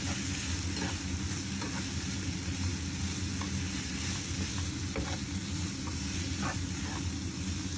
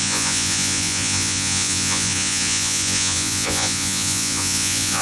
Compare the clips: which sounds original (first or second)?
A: first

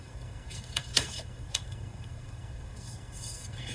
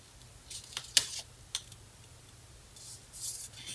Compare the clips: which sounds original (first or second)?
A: second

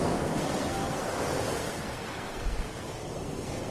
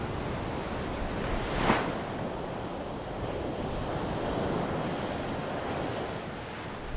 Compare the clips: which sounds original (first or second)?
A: second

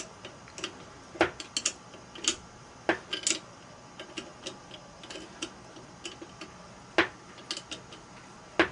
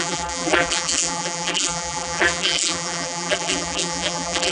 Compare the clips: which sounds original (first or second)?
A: first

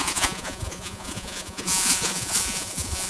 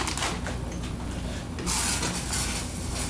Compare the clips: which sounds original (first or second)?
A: second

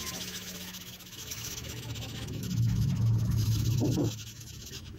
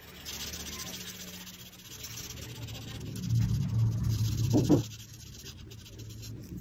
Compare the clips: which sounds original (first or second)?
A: second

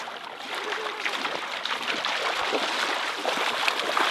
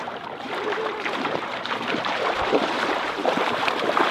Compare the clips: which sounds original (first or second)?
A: first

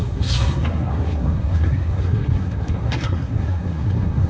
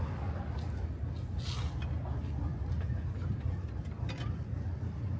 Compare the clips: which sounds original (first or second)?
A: second